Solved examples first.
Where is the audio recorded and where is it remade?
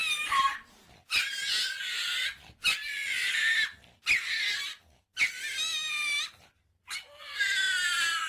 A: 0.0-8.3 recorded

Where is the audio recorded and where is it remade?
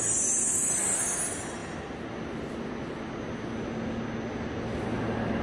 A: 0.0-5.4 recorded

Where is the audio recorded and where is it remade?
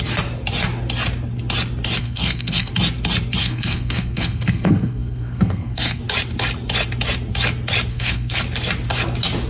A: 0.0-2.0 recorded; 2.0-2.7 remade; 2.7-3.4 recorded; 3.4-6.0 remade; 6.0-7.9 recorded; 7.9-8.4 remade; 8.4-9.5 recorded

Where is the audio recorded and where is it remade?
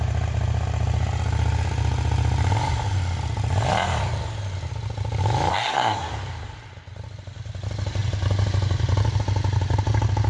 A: 0.0-5.5 recorded; 5.5-6.1 remade; 6.1-10.3 recorded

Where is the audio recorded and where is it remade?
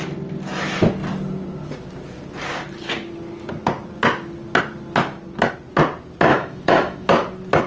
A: 0.0-6.3 recorded; 6.3-7.1 remade; 7.1-7.7 recorded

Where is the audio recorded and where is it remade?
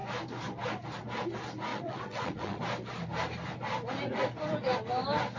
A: 0.0-1.7 recorded; 1.7-2.6 remade; 2.6-5.4 recorded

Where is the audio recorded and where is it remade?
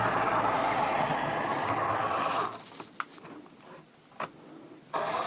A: 0.0-5.3 recorded